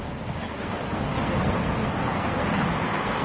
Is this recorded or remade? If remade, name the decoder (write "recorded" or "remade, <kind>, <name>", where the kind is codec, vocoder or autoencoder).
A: remade, codec, SNAC